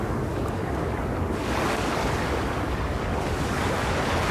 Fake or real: fake